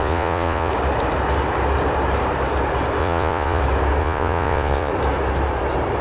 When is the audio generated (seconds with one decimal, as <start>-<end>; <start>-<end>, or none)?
0.0-0.7; 3.0-3.6; 4.0-4.9